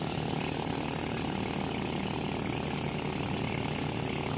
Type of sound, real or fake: real